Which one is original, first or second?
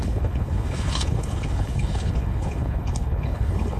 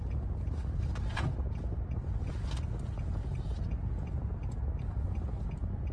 second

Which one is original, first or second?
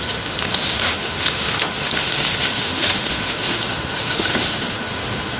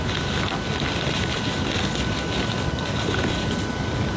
second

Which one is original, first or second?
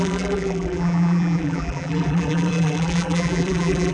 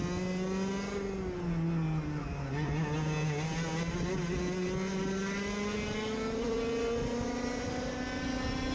second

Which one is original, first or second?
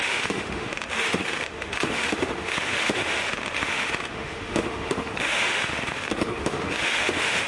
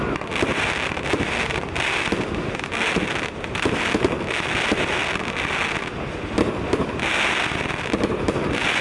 second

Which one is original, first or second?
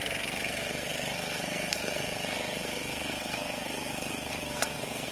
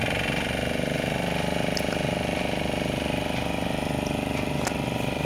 second